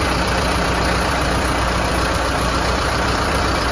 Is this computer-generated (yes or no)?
yes